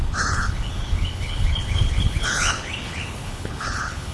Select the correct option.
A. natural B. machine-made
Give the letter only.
B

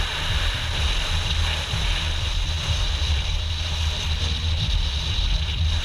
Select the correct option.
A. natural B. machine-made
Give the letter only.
A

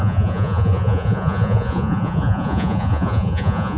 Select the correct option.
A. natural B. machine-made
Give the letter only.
B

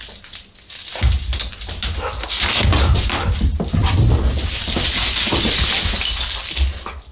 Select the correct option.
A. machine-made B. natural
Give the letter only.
B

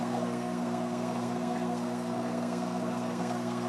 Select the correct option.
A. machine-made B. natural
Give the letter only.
A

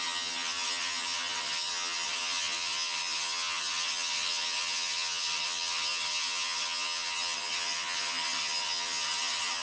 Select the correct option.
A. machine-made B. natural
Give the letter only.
A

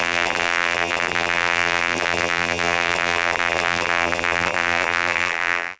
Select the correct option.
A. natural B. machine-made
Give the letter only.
B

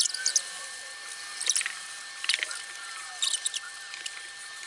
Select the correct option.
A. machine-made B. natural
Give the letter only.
B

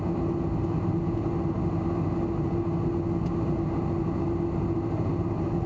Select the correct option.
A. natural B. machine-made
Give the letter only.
A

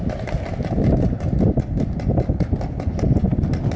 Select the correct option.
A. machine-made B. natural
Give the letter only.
B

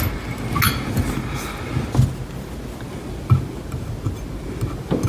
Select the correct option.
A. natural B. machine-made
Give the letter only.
A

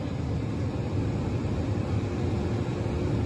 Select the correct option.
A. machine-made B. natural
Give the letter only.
B